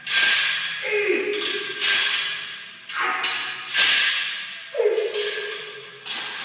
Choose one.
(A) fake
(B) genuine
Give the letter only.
B